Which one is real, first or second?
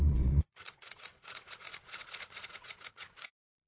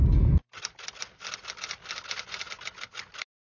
second